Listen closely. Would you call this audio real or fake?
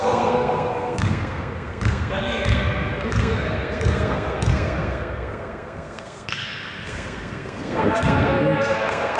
fake